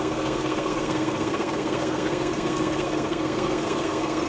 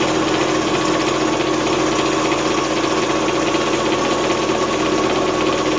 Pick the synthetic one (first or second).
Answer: first